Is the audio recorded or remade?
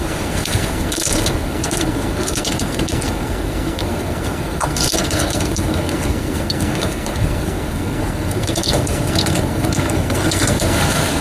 remade